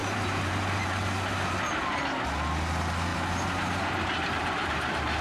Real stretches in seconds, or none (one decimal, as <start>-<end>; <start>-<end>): 2.0-3.1